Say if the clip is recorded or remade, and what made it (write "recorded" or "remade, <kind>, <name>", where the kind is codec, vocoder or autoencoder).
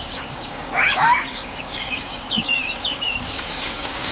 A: remade, codec, DAC